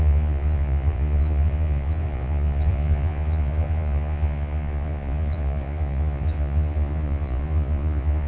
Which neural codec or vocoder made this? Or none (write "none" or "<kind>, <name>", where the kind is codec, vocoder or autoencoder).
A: vocoder, Vocos